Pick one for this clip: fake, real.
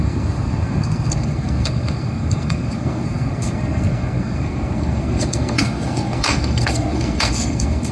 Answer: fake